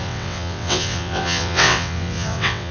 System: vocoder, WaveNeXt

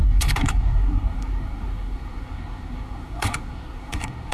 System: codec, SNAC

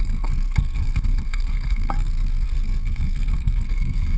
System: codec, SNAC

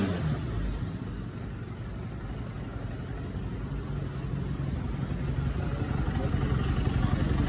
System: none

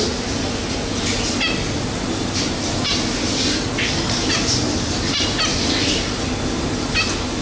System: none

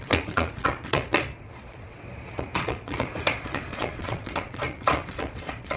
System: vocoder, Vocos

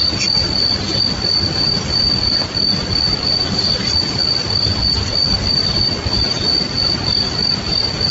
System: none